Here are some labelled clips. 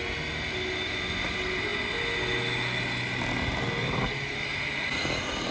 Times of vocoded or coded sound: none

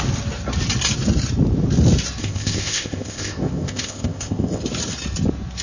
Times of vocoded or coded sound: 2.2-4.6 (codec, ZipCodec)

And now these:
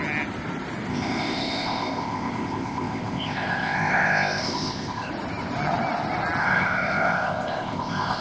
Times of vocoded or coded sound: 0.9-5.1 (codec, ZipCodec); 6.4-8.2

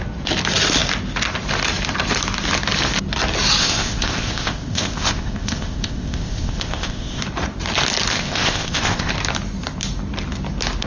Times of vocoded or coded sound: 3.6-7.2 (codec, ZipCodec); 8.1-9.1

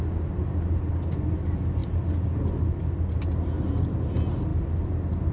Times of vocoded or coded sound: none

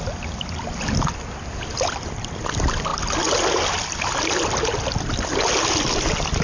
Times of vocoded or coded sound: none

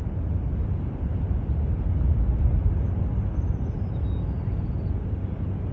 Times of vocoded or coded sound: none